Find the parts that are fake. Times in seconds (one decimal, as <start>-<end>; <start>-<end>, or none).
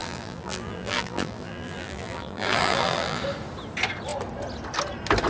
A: 0.0-3.2